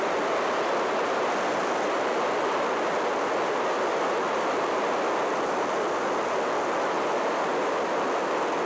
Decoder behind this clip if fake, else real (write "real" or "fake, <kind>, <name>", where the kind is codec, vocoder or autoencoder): real